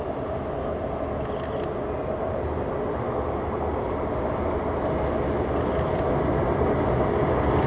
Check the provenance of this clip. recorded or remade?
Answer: recorded